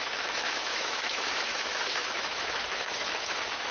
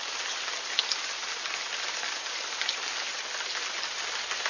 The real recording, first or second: second